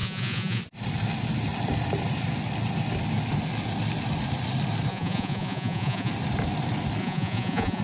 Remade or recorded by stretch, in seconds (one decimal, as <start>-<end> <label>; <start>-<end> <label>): 0.0-0.6 remade; 0.6-4.9 recorded; 4.9-6.1 remade; 6.1-7.0 recorded; 7.0-7.8 remade